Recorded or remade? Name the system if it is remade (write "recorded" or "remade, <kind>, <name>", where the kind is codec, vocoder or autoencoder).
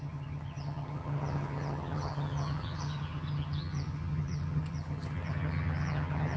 remade, vocoder, HiFi-GAN